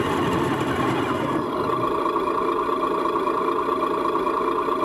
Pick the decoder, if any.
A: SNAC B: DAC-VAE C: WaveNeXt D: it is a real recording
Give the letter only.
D